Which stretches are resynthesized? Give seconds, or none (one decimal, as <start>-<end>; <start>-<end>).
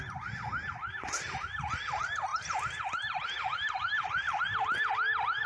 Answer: 2.3-4.4